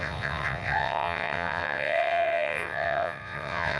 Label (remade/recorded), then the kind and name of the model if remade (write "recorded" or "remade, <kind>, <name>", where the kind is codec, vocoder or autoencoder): remade, vocoder, WaveNeXt